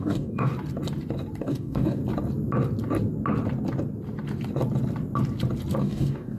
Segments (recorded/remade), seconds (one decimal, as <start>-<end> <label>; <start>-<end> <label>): 0.0-0.5 remade; 0.5-1.4 recorded; 1.4-2.0 remade; 2.0-5.8 recorded; 5.8-6.4 remade